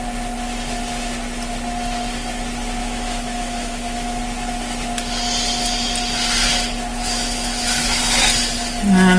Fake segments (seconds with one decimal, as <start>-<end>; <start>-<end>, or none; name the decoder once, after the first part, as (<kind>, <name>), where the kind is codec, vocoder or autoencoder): 2.8-4.2 (autoencoder, DAC-VAE); 6.9-8.0